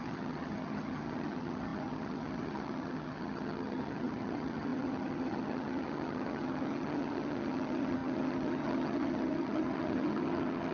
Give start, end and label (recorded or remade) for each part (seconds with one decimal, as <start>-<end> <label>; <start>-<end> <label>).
0.0-10.7 remade